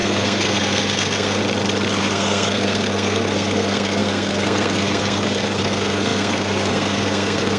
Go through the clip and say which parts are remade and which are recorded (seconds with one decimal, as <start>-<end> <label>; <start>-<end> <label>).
0.0-1.4 remade; 1.4-2.0 recorded; 2.0-7.6 remade